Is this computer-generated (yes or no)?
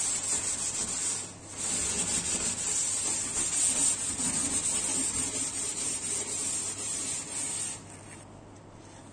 no